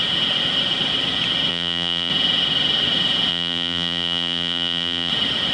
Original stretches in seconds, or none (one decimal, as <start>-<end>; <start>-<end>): 0.0-1.5; 2.1-3.3; 5.1-5.5